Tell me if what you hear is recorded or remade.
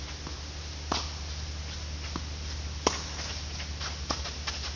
recorded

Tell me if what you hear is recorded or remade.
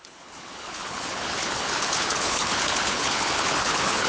remade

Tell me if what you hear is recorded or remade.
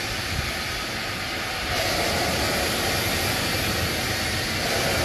recorded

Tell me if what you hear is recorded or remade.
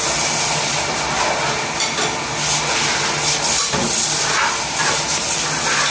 recorded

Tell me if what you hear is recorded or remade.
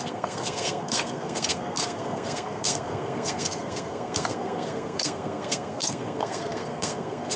remade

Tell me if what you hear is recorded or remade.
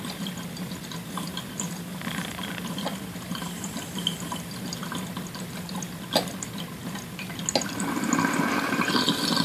recorded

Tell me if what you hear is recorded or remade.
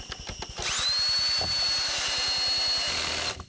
recorded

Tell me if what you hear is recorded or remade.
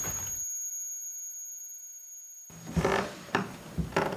remade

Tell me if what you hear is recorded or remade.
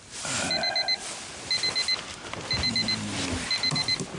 recorded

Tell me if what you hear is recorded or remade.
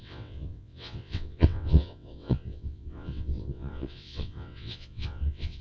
remade